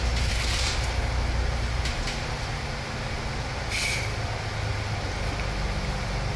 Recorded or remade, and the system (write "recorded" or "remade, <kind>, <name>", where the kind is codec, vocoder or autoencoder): recorded